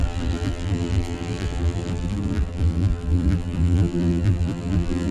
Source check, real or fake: fake